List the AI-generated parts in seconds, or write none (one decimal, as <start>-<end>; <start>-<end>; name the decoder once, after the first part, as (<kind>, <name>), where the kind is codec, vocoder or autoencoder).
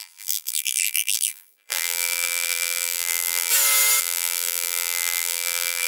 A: 0.0-3.5 (vocoder, BigVGAN v2); 4.0-5.9